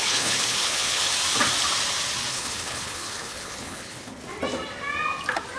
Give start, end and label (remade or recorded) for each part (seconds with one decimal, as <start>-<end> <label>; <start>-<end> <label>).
0.0-1.1 remade; 1.1-2.3 recorded; 2.3-4.2 remade; 4.2-5.6 recorded